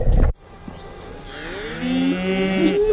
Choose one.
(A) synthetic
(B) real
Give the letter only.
B